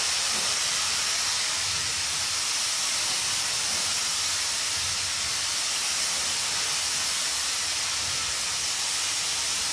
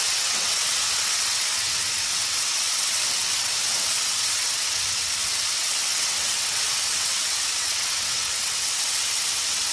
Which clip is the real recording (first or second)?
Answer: first